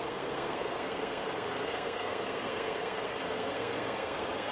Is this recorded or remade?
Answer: remade